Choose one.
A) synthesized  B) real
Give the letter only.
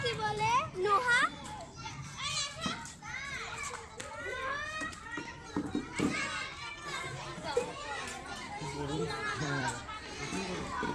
A